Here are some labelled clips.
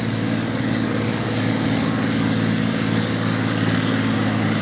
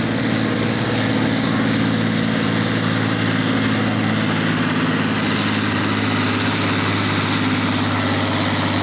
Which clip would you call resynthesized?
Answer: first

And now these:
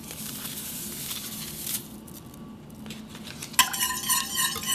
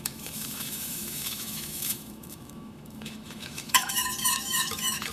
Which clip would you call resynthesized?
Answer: second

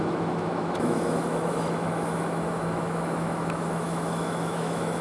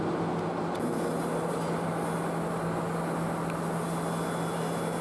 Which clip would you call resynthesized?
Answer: first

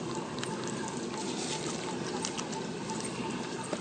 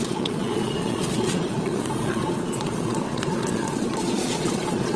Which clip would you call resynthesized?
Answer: second